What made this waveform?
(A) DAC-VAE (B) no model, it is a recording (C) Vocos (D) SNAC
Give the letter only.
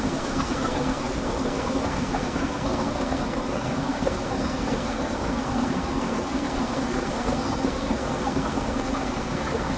D